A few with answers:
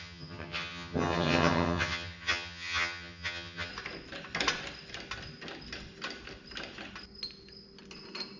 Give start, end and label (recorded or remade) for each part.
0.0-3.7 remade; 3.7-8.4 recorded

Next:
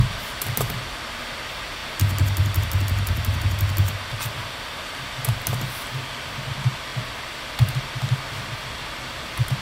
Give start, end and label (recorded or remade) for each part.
0.0-1.8 recorded; 1.8-5.0 remade; 5.0-9.6 recorded

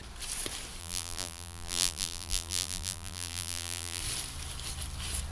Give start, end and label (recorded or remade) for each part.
0.0-0.8 recorded; 0.8-4.0 remade; 4.0-5.3 recorded

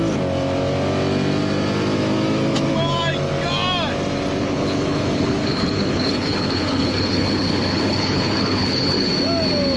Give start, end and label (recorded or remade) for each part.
0.0-4.4 recorded; 4.4-9.1 remade; 9.1-9.8 recorded

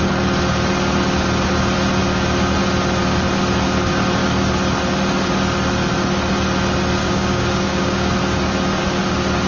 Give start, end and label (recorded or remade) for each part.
0.0-7.0 recorded; 7.0-8.1 remade; 8.1-9.5 recorded

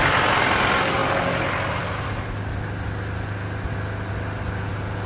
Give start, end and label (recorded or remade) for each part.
0.0-5.1 recorded